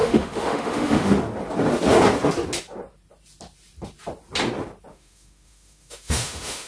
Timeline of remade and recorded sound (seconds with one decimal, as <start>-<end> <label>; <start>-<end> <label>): 0.0-1.1 remade; 1.1-4.9 recorded; 4.9-6.7 remade